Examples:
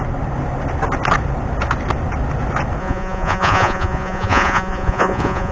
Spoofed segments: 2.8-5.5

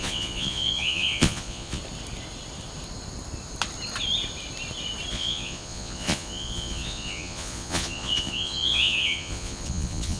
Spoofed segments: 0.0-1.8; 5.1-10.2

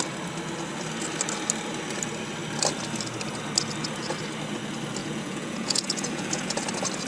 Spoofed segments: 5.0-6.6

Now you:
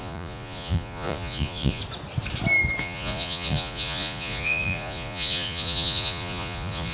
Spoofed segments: 0.0-1.8; 2.8-6.9

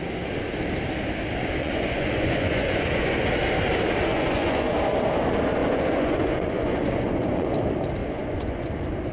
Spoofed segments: 1.6-3.3; 4.1-4.7; 5.6-7.5; 8.0-8.7

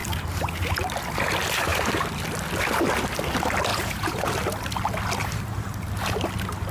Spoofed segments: 3.7-4.3